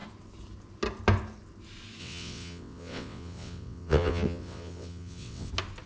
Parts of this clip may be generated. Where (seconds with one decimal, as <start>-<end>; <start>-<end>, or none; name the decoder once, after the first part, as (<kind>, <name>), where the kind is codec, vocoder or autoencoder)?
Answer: 2.0-5.5 (vocoder, WaveNeXt)